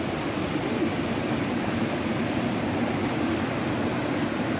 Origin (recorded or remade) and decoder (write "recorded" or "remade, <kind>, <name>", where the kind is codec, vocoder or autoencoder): recorded